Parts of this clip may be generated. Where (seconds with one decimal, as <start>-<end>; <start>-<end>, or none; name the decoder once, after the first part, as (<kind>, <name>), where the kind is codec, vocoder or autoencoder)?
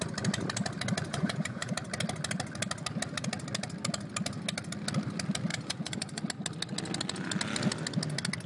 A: 1.1-1.7 (vocoder, Vocos); 5.5-6.2